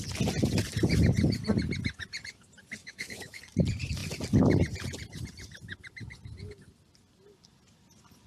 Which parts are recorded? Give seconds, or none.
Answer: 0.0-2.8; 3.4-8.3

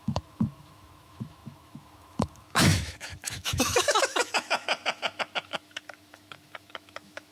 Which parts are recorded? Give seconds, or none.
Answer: none